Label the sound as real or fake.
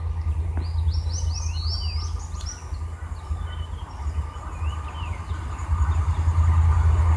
real